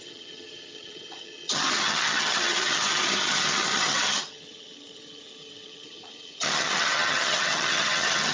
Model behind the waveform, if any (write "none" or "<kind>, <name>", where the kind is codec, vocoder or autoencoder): vocoder, HiFi-GAN